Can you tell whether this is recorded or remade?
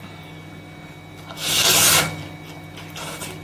recorded